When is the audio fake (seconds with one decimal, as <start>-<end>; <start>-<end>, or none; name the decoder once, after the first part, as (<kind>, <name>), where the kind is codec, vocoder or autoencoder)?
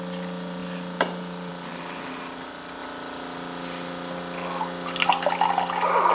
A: none